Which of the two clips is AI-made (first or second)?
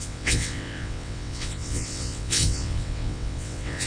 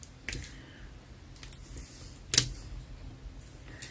first